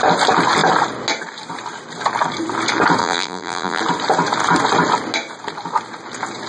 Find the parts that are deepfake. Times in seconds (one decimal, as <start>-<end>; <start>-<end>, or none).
3.0-3.8